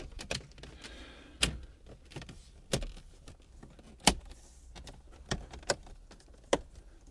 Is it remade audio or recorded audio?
recorded